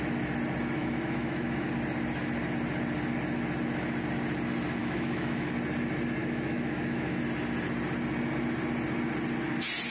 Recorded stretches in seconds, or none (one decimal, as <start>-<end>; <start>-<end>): 0.0-0.8; 1.7-4.8; 5.5-6.2; 7.2-9.9